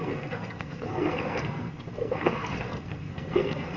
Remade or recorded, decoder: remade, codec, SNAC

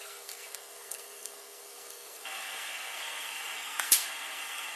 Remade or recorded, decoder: remade, codec, SNAC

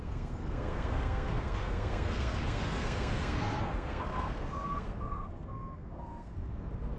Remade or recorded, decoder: remade, codec, SNAC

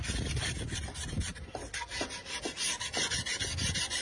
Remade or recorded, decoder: recorded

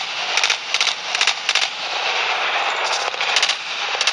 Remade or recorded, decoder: recorded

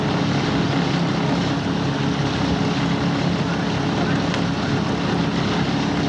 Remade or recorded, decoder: recorded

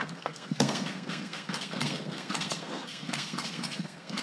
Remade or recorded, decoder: remade, codec, SNAC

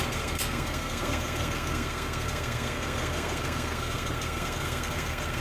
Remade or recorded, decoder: remade, codec, SNAC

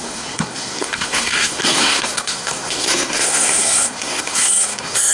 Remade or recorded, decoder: remade, codec, SNAC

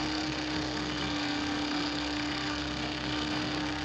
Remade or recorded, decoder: remade, codec, SNAC